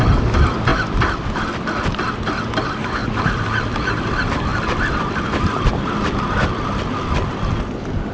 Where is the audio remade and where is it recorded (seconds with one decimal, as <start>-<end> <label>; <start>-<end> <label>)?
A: 0.0-0.7 recorded; 0.7-2.0 remade; 2.0-3.0 recorded; 3.0-3.5 remade; 3.5-4.5 recorded; 4.5-5.7 remade; 5.7-8.1 recorded